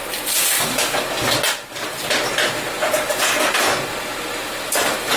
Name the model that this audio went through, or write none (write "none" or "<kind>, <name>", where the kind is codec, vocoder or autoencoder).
none